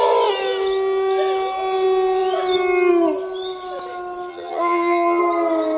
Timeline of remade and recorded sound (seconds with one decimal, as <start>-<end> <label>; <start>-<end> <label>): 0.0-4.3 recorded; 4.3-5.2 remade; 5.2-5.8 recorded